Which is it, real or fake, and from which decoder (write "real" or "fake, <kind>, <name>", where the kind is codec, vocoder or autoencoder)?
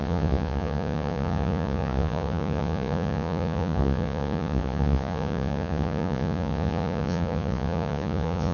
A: fake, vocoder, Vocos